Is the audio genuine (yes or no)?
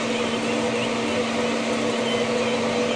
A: yes